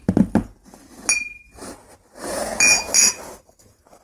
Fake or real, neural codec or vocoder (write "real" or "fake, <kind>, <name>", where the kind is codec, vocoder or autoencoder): real